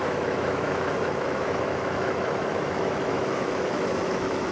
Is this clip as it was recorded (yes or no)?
no